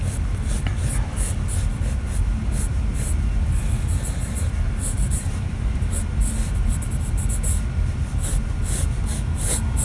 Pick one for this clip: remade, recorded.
remade